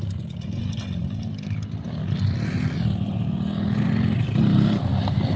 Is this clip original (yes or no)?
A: yes